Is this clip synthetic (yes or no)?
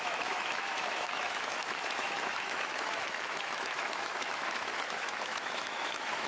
yes